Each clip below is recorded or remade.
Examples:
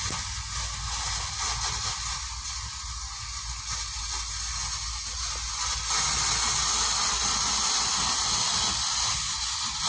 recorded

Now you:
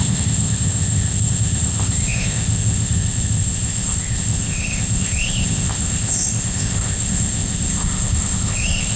remade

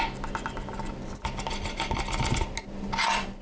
recorded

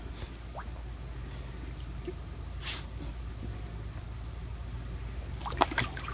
recorded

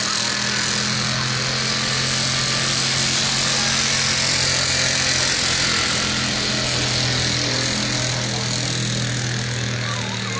recorded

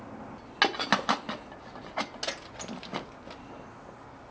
recorded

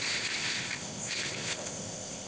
remade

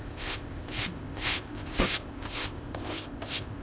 remade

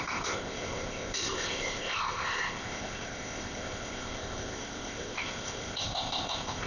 remade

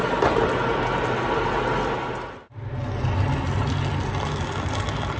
recorded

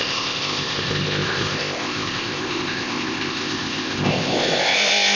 remade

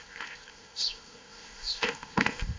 remade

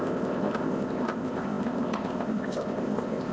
remade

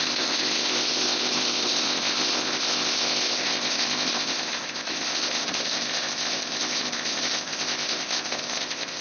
remade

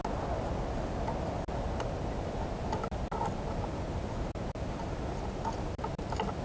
recorded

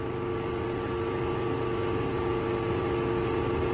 recorded